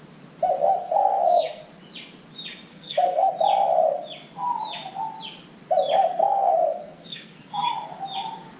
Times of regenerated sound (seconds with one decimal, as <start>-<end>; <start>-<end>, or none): 0.8-1.6; 2.7-3.3; 6.0-7.7